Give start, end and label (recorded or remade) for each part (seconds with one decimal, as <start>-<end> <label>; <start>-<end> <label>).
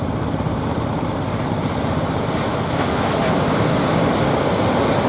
0.0-2.5 recorded; 2.5-3.1 remade; 3.1-5.1 recorded